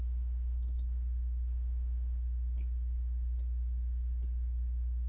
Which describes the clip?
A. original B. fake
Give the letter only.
A